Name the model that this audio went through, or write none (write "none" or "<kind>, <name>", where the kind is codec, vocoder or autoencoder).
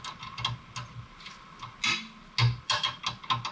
none